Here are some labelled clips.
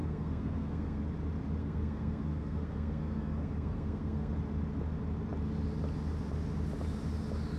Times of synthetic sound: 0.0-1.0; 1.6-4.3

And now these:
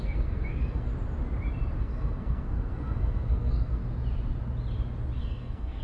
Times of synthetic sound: 0.0-0.9; 1.8-3.8; 5.2-5.8